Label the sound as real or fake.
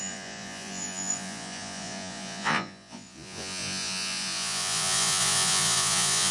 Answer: fake